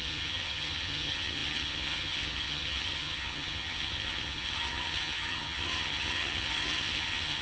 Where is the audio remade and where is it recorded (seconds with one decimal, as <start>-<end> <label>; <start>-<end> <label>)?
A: 0.0-7.4 remade